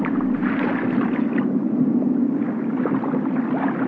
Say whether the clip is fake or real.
real